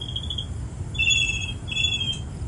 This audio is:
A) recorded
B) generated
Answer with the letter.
A